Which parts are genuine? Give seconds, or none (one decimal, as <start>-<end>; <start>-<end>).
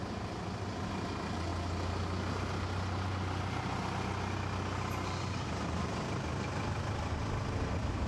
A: 0.0-8.1